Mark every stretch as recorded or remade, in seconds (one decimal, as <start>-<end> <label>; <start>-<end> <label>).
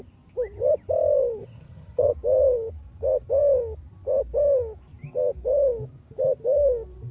0.0-1.4 recorded; 1.4-2.1 remade; 2.1-7.1 recorded